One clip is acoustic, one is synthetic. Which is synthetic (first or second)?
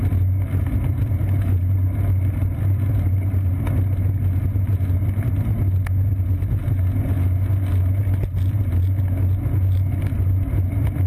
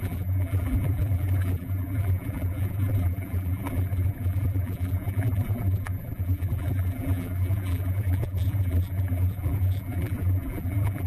second